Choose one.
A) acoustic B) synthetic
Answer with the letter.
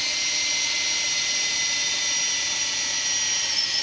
A